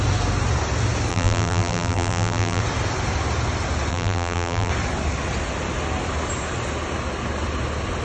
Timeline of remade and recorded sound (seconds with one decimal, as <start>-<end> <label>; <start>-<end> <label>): 0.0-1.1 recorded; 1.1-2.6 remade; 2.6-3.9 recorded; 3.9-4.7 remade; 4.7-8.0 recorded